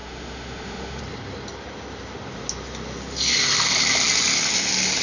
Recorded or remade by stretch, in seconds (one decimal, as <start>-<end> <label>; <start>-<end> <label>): 0.0-1.0 remade; 1.0-5.0 recorded